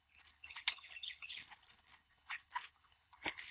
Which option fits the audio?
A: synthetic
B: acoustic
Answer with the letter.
A